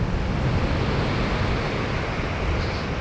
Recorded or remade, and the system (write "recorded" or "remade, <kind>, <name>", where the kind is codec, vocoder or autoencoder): recorded